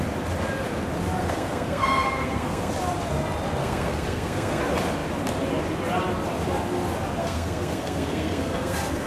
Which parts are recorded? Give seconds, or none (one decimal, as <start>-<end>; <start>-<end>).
0.0-1.2; 2.7-3.6; 4.6-7.2